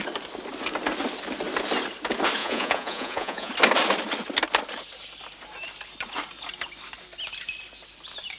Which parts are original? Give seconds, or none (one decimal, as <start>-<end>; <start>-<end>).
0.0-2.4; 3.5-8.4